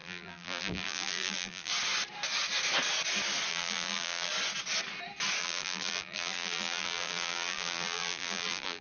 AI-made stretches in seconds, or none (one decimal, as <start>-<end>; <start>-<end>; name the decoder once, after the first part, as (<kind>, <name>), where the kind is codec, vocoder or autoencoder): 0.0-1.7 (vocoder, BigVGAN v2); 3.5-4.3; 5.4-8.8